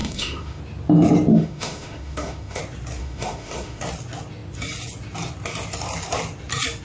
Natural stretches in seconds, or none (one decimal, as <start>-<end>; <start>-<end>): 0.6-1.3; 2.6-3.0; 3.8-6.8